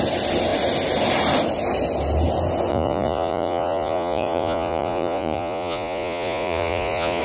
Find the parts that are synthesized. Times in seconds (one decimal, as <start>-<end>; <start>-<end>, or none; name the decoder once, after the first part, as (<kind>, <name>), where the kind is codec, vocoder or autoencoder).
2.7-7.2 (vocoder, Vocos)

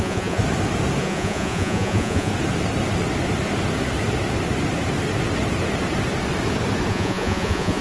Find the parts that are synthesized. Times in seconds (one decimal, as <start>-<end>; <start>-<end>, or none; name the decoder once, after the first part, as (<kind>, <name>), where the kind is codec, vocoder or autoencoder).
0.0-0.4 (vocoder, Vocos); 1.0-2.3; 6.9-7.8